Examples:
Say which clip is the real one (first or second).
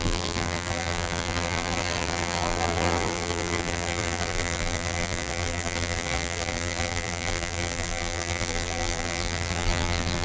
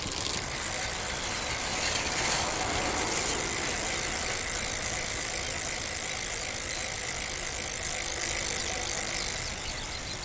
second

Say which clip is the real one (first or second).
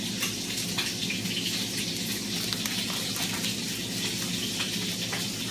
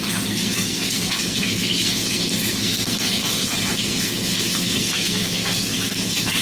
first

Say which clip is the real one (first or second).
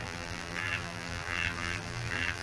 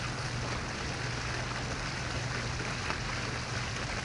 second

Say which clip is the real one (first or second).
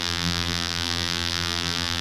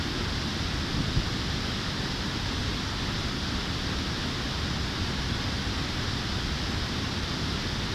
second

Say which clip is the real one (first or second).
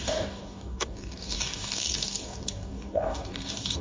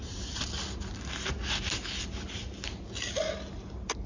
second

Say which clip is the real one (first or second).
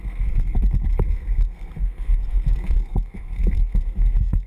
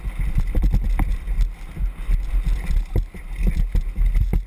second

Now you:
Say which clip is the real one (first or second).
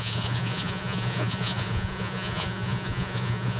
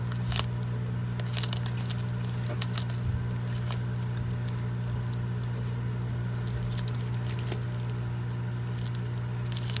second